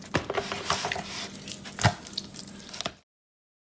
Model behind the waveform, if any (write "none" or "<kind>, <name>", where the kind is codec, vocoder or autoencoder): none